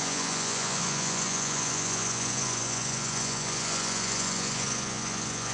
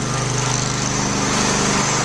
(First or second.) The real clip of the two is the second